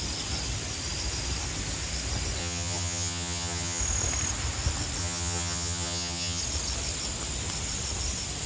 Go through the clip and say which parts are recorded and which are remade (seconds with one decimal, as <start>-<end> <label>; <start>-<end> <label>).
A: 0.0-2.4 recorded; 2.4-3.8 remade; 3.8-5.0 recorded; 5.0-6.4 remade; 6.4-8.5 recorded